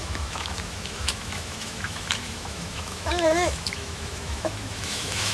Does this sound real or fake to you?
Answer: fake